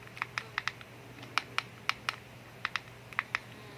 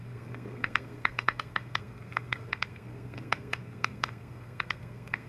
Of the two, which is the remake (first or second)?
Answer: second